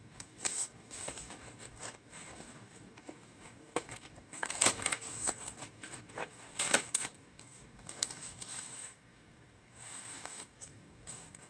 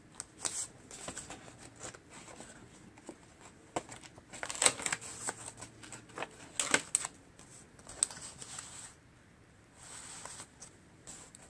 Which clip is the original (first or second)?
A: second